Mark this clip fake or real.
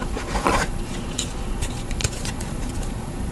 fake